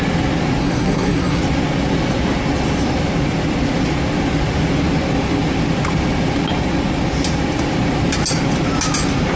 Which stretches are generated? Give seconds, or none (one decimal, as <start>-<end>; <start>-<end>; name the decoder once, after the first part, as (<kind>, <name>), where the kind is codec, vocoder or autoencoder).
0.6-1.4 (codec, SNAC)